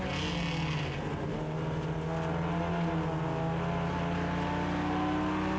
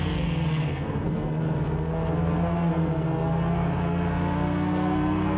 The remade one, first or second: second